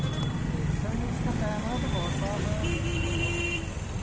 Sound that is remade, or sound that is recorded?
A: recorded